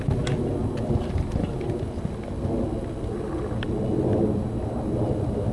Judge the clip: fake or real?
real